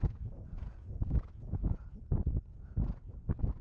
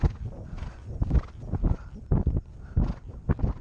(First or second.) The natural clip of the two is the second